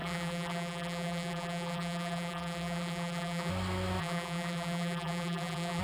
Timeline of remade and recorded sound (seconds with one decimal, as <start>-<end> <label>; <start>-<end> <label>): 0.0-3.5 remade; 3.5-4.0 recorded; 4.0-5.8 remade

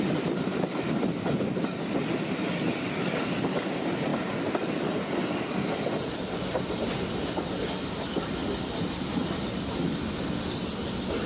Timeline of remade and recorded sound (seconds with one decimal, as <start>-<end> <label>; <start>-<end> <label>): 0.0-11.3 recorded